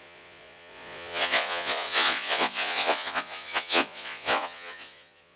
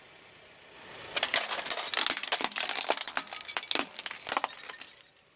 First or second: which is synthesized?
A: first